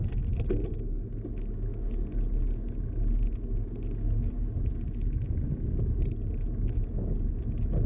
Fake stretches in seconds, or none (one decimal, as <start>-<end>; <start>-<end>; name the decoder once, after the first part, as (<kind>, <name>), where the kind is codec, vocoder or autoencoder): none